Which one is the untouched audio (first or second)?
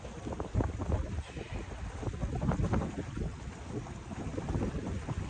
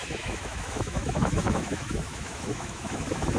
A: first